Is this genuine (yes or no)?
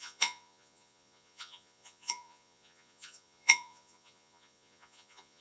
no